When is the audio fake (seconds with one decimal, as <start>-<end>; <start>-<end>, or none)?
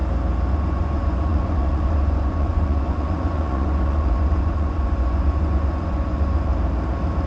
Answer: 0.5-6.5